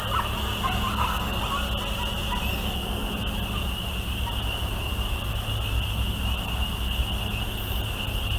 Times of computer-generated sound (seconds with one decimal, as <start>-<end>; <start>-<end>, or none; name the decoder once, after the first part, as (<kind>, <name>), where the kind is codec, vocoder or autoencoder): 0.9-1.4 (codec, SNAC); 2.5-3.1